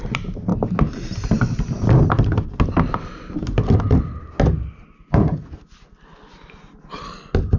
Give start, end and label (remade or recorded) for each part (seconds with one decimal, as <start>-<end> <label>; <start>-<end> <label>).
0.0-7.6 recorded